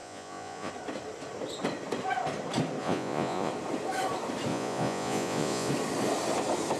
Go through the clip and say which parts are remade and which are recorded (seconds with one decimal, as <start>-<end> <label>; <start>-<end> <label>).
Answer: 0.0-0.7 remade; 0.7-2.8 recorded; 2.8-3.5 remade; 3.5-4.5 recorded; 4.5-5.7 remade; 5.7-6.8 recorded